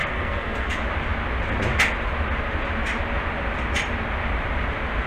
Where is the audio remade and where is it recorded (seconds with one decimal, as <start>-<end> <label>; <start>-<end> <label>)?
0.0-0.7 remade; 0.7-5.1 recorded